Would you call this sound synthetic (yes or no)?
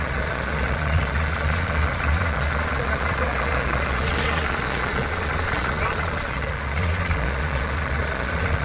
yes